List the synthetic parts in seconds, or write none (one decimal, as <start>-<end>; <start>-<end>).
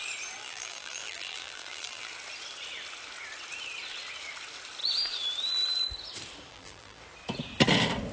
0.4-2.1; 6.5-7.0